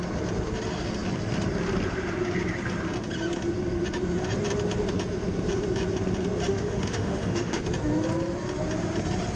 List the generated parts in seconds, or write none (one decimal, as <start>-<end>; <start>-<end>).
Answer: 6.5-7.6